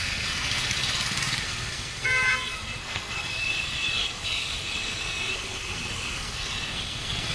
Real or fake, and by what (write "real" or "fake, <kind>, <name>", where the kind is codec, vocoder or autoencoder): fake, codec, SNAC